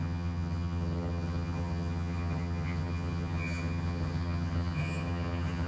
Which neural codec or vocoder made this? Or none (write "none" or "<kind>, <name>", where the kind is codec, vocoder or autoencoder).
vocoder, HiFi-GAN